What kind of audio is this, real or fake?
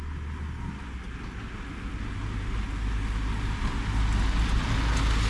real